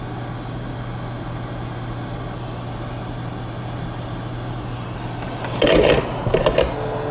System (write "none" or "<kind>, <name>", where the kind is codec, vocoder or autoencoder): none